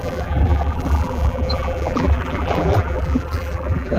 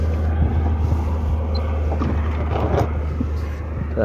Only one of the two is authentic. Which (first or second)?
second